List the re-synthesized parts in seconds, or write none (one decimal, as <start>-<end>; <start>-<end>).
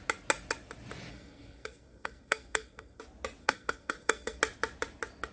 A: 1.1-3.0; 3.4-4.4